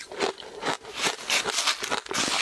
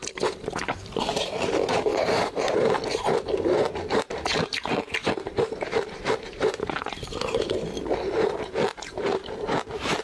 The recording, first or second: first